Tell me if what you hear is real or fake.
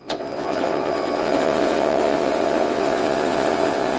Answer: fake